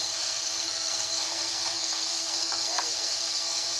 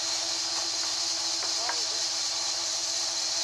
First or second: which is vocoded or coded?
first